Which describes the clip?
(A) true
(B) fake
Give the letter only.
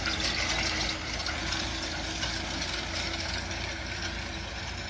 A